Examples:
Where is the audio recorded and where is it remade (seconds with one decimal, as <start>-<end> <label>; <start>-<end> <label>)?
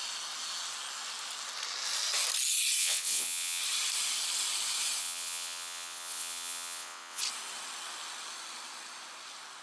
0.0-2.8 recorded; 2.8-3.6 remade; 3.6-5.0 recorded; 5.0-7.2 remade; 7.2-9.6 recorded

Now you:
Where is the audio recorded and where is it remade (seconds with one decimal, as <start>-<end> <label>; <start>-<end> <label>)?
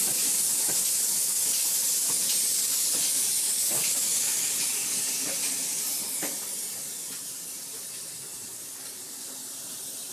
0.0-1.2 recorded; 1.2-1.8 remade; 1.8-3.4 recorded; 3.4-5.1 remade; 5.1-8.5 recorded; 8.5-9.0 remade; 9.0-10.1 recorded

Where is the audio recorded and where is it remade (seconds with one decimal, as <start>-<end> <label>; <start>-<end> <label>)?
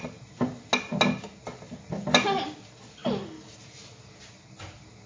0.0-5.1 recorded